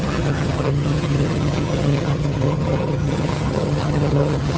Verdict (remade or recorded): remade